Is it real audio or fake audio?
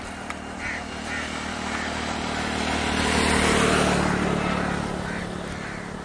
real